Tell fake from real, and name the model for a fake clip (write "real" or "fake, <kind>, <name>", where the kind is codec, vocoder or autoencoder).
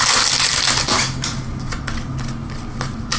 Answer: real